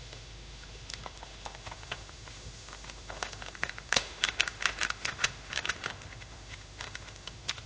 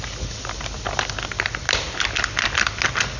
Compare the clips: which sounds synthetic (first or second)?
first